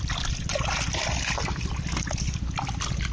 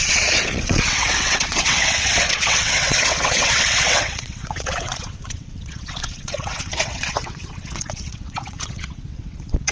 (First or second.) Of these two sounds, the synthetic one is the second